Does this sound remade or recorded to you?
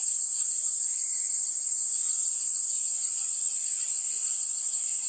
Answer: recorded